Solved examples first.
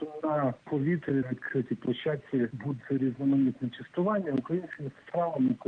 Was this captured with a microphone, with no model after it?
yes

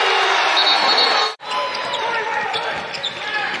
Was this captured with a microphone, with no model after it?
yes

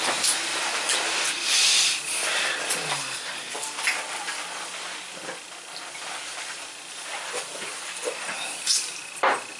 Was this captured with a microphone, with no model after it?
yes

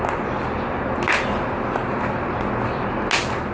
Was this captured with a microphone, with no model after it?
yes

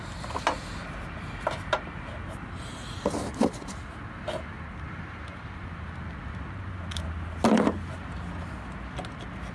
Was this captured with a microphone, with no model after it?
yes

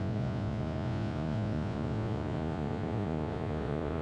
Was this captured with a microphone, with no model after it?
no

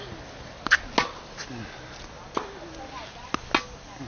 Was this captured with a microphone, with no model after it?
yes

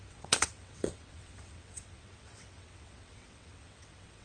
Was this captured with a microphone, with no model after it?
no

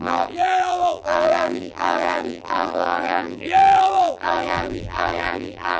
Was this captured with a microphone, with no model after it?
no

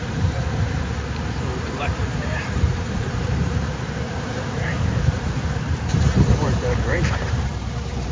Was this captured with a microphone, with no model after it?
no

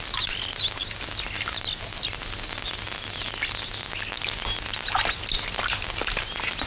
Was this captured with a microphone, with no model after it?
yes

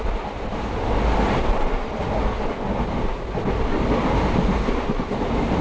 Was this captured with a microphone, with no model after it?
yes